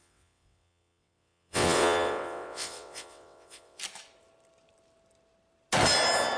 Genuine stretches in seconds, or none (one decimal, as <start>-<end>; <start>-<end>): 3.8-6.4